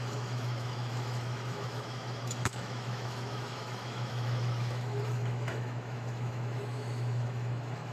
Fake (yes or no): yes